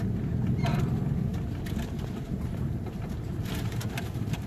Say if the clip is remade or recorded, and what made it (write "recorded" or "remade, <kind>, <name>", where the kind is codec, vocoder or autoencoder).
remade, vocoder, BigVGAN v2